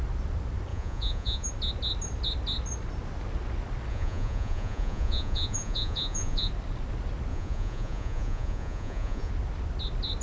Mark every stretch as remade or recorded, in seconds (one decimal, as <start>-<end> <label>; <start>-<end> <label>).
0.0-0.7 recorded; 0.7-1.5 remade; 1.5-3.9 recorded; 3.9-6.5 remade; 6.5-7.3 recorded; 7.3-9.3 remade; 9.3-10.2 recorded